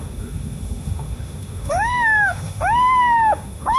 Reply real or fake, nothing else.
fake